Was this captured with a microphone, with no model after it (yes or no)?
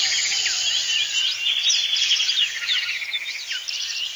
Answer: yes